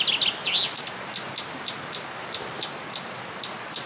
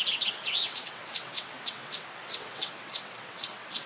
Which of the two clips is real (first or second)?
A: first